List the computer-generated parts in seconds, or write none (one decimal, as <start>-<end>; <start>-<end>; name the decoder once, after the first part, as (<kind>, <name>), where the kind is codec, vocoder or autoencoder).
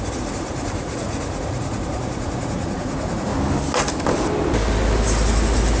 0.0-3.3 (vocoder, Vocos)